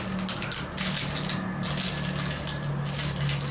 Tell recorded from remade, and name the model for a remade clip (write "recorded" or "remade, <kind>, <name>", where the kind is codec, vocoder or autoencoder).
recorded